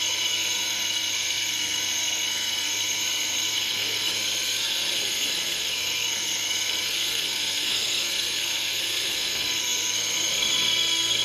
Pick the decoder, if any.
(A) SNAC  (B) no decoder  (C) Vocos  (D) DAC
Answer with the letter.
A